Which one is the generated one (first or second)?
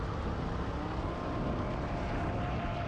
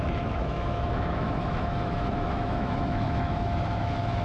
second